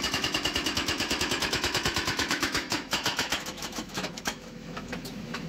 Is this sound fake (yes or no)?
yes